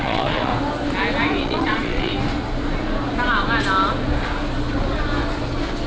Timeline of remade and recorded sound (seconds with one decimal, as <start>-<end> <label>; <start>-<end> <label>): 0.0-0.5 remade; 0.5-1.4 recorded; 1.4-2.1 remade; 2.1-5.9 recorded